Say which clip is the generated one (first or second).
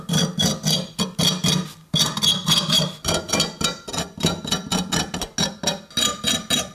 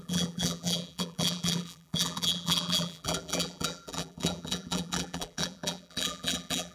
second